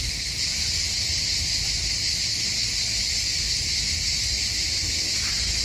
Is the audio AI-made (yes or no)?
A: no